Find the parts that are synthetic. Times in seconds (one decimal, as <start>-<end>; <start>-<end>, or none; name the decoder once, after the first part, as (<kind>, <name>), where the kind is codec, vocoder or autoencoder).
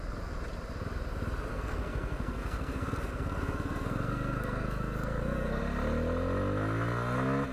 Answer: 1.5-5.6 (codec, SNAC)